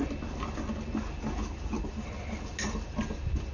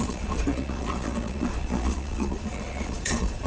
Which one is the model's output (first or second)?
second